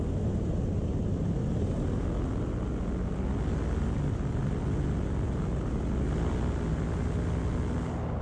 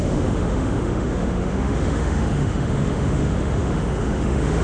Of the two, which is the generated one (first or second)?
second